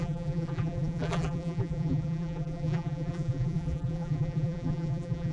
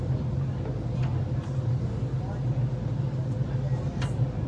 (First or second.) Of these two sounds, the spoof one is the first